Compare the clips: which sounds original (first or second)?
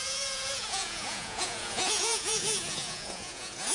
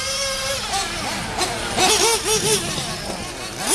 second